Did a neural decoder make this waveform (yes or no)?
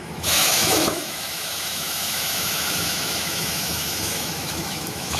yes